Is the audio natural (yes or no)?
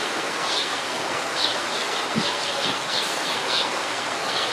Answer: no